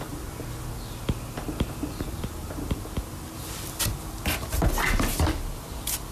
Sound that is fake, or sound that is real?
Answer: real